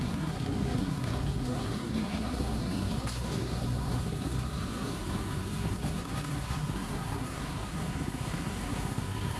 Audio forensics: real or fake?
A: fake